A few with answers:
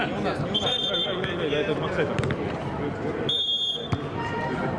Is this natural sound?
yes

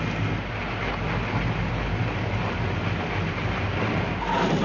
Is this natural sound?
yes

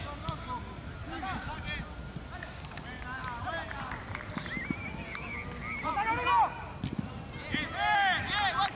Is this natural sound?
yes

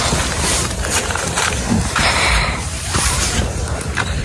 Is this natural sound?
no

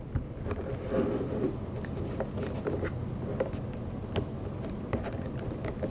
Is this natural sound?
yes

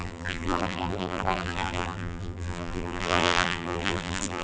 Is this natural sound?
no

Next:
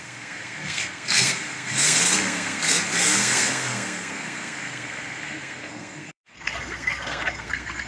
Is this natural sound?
no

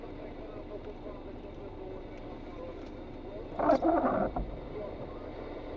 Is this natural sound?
yes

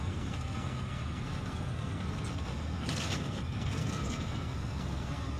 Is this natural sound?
no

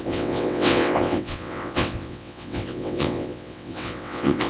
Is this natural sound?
no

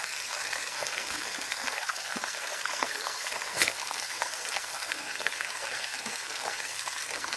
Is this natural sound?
no